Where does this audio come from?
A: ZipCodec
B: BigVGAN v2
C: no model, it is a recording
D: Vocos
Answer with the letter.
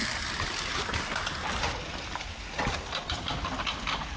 C